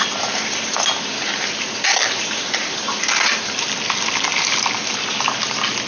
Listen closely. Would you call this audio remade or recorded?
recorded